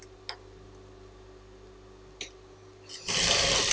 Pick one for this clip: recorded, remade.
recorded